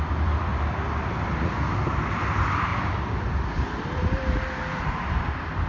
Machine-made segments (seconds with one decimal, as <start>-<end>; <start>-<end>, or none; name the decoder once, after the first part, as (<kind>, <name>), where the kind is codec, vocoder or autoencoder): 0.0-0.5 (vocoder, BigVGAN v2); 2.3-2.7; 4.8-5.7